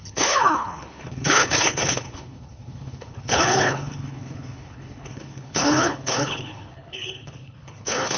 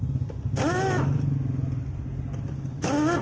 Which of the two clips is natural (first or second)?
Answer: second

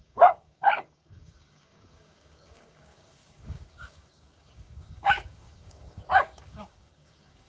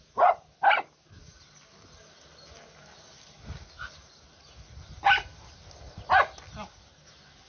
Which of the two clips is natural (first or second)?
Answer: second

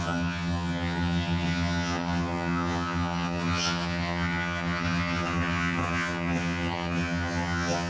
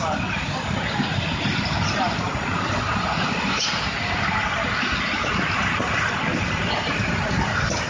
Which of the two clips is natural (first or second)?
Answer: second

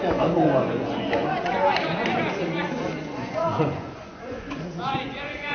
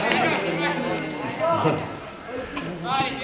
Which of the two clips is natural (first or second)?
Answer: second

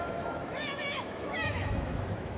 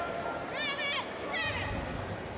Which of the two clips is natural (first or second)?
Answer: second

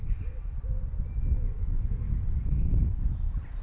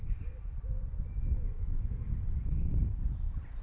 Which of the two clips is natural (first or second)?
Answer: first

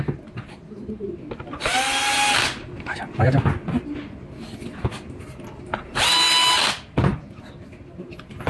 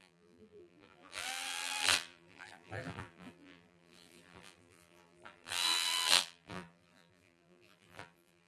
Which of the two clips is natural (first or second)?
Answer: first